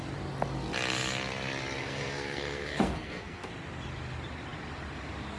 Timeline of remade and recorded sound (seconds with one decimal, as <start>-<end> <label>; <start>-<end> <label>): 0.0-1.8 recorded; 1.8-3.5 remade; 3.5-5.4 recorded